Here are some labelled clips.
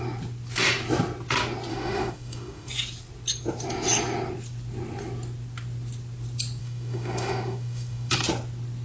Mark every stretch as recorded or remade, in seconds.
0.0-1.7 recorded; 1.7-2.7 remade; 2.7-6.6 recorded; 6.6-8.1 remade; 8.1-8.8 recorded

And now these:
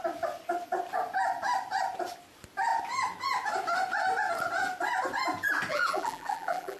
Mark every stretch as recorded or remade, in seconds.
0.0-5.7 recorded; 5.7-6.8 remade

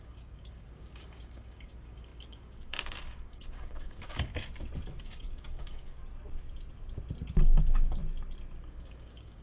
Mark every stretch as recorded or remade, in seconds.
0.0-4.3 remade; 4.3-5.0 recorded; 5.0-6.0 remade; 6.0-7.6 recorded; 7.6-8.0 remade; 8.0-8.7 recorded; 8.7-9.4 remade